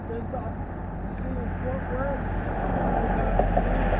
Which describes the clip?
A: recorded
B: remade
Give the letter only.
A